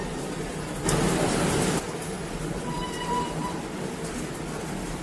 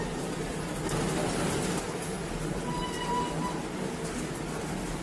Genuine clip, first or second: second